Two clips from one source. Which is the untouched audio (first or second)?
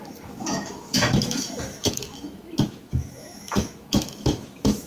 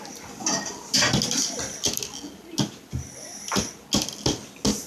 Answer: second